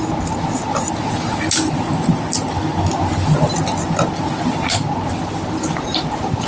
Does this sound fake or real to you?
real